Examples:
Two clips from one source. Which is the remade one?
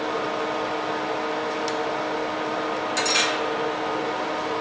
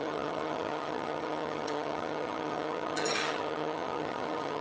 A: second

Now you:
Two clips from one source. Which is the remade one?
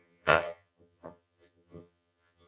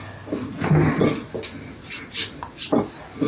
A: first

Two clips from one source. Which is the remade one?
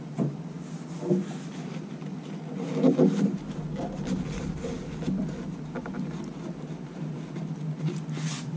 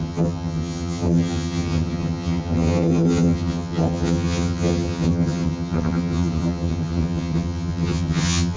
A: second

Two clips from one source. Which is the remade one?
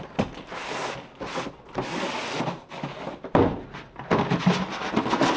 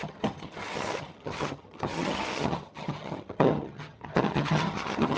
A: second